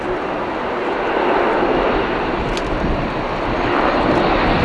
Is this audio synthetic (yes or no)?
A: no